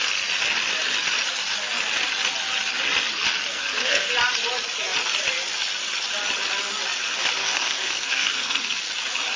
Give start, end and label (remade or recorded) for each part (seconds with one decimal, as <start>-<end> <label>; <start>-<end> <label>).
0.0-3.5 recorded; 3.5-4.1 remade; 4.1-7.4 recorded; 7.4-8.8 remade; 8.8-9.4 recorded